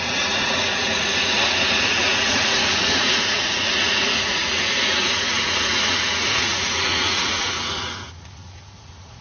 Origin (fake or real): fake